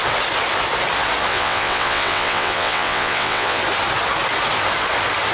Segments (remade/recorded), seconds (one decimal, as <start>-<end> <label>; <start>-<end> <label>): 0.0-1.3 recorded; 1.3-3.6 remade; 3.6-5.3 recorded